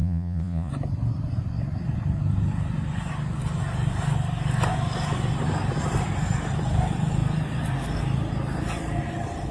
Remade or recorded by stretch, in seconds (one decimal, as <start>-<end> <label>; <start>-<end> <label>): 0.0-0.7 remade; 0.7-9.5 recorded